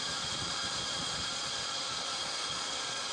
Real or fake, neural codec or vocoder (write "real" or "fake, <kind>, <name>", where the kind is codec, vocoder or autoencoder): fake, vocoder, Vocos